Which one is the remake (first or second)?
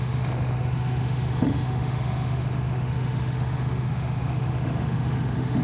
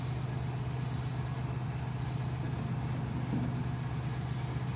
first